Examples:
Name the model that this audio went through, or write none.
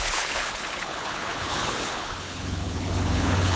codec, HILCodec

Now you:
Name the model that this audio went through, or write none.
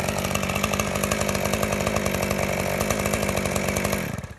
none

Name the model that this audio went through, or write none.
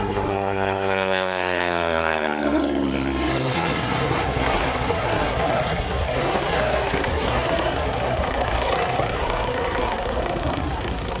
codec, SNAC